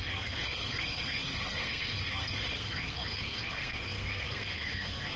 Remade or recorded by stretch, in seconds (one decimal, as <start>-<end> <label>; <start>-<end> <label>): 0.0-5.2 remade